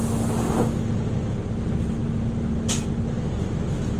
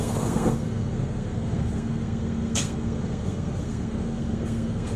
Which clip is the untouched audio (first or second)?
first